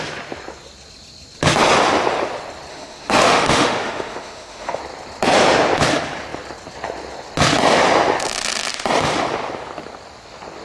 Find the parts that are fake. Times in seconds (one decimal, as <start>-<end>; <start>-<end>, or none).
2.7-4.8

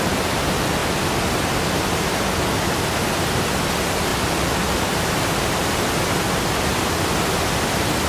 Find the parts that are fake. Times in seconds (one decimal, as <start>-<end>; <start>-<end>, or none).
none

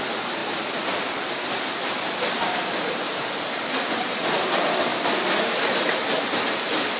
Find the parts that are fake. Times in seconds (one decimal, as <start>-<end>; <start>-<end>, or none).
none

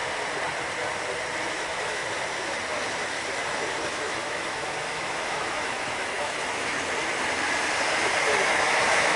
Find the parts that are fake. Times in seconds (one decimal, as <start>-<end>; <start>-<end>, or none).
1.5-2.0; 3.9-6.7; 8.5-9.2

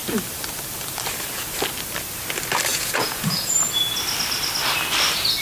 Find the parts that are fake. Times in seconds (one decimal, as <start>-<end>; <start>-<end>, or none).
2.7-3.5